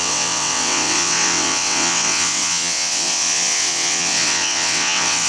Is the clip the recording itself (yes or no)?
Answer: no